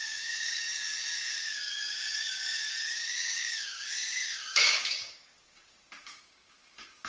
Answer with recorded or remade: remade